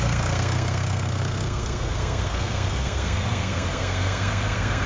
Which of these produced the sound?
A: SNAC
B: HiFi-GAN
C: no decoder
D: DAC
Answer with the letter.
A